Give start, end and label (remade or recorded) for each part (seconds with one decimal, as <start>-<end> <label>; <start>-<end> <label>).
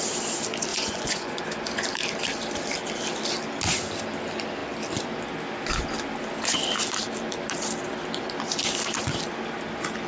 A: 0.0-0.7 recorded; 0.7-1.4 remade; 1.4-10.1 recorded